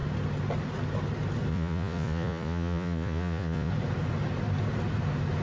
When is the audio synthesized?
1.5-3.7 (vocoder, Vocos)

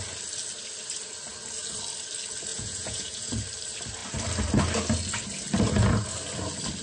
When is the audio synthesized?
2.5-3.3 (vocoder, Vocos)

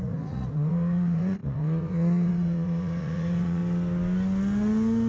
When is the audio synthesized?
0.0-3.6 (vocoder, Vocos)